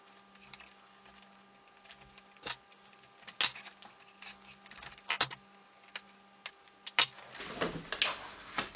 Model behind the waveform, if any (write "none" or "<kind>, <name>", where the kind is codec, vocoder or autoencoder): none